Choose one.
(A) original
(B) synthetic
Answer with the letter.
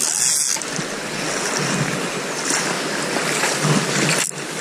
A